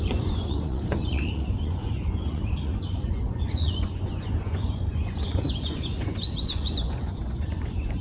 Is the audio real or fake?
fake